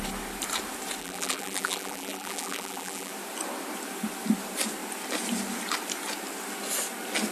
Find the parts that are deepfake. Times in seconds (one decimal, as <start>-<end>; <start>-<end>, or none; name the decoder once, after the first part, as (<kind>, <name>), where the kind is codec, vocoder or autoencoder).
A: 1.0-3.1 (vocoder, BigVGAN v2)